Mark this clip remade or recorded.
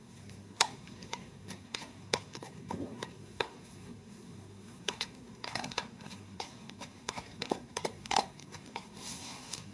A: remade